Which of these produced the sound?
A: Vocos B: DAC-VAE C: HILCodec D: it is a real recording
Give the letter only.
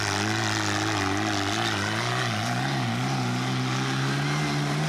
D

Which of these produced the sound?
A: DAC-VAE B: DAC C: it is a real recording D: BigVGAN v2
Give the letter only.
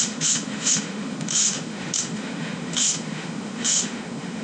A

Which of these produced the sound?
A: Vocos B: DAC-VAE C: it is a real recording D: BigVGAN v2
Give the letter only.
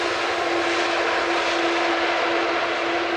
C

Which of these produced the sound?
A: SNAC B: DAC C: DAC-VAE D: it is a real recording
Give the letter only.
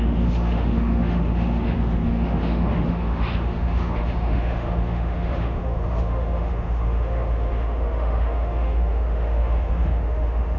C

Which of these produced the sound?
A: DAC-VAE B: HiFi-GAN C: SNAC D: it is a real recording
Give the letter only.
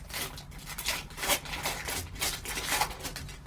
D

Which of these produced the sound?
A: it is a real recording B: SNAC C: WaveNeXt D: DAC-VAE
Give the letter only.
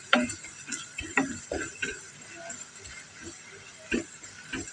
A